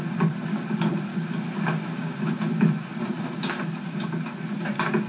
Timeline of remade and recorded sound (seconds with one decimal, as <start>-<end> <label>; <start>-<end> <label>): 0.0-1.1 recorded; 1.1-2.4 remade; 2.4-3.0 recorded; 3.0-3.8 remade; 3.8-5.1 recorded